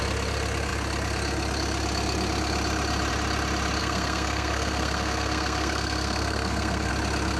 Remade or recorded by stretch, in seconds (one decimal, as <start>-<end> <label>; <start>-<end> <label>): 0.0-3.8 recorded; 3.8-6.9 remade; 6.9-7.4 recorded